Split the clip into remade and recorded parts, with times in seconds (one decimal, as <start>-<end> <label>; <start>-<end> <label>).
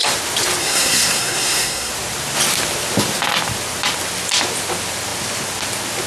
0.0-0.6 recorded; 0.6-1.9 remade; 1.9-6.1 recorded